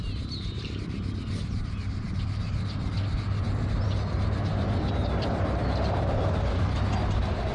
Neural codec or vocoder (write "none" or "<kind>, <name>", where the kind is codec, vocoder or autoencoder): none